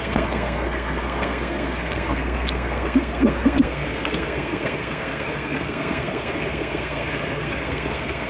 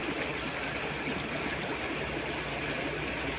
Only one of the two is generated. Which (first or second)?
first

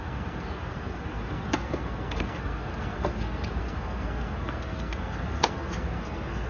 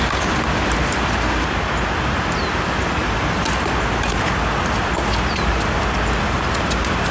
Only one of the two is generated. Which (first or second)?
first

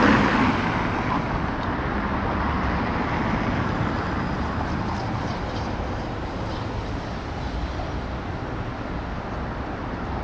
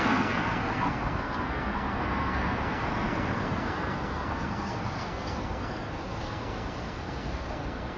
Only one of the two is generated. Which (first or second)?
second